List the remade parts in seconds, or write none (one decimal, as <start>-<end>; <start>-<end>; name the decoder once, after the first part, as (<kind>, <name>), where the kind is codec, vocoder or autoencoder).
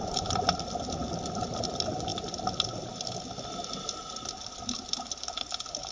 none